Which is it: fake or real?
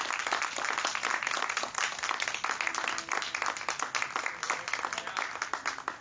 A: real